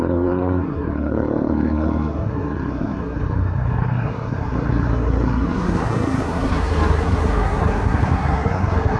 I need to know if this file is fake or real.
fake